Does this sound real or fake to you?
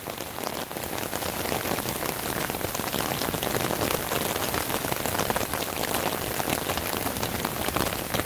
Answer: real